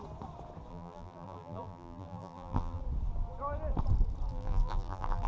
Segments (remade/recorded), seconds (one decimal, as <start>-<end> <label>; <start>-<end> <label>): 0.0-0.7 recorded; 0.7-2.8 remade; 2.8-4.3 recorded; 4.3-5.3 remade